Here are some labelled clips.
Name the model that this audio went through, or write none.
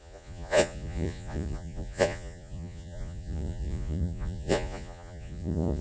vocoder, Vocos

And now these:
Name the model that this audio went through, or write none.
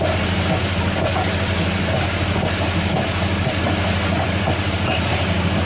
none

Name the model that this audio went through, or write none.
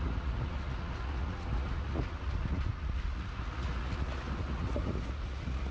vocoder, Vocos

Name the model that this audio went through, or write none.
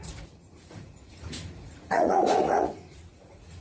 vocoder, Vocos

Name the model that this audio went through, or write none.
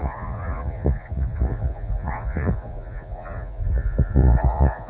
vocoder, Vocos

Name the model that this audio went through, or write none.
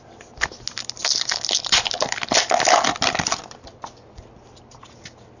none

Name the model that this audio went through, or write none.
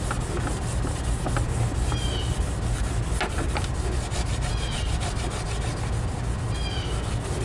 none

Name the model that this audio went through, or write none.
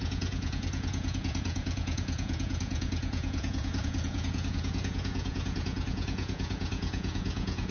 vocoder, Vocos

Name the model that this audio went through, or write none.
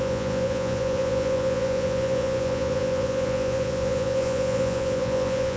vocoder, Vocos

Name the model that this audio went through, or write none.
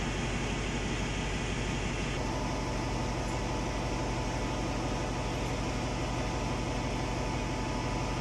none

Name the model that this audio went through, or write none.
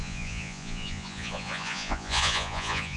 vocoder, Vocos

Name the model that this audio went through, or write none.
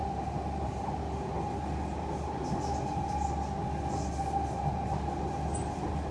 none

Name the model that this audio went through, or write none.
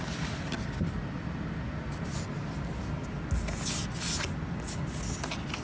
none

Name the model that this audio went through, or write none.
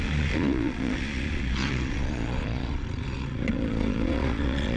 vocoder, Vocos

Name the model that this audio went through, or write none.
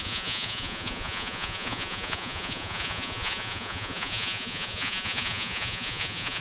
vocoder, Vocos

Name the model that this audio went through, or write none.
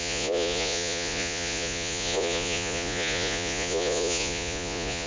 vocoder, Vocos